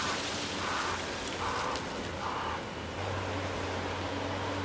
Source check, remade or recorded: recorded